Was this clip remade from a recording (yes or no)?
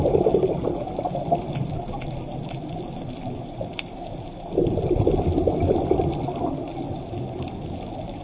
no